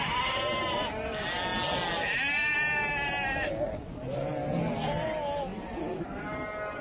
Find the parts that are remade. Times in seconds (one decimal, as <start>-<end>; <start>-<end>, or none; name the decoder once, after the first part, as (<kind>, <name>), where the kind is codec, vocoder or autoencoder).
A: none